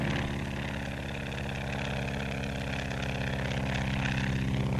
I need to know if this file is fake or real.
real